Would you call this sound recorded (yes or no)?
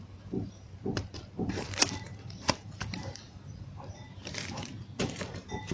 no